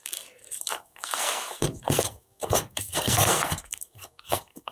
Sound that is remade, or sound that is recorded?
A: remade